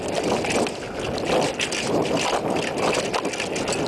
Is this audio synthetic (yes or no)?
no